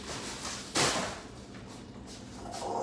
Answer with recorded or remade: recorded